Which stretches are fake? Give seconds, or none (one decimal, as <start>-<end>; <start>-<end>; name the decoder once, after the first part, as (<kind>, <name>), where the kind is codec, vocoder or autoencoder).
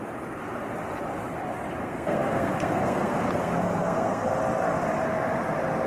1.8-4.3 (codec, SNAC)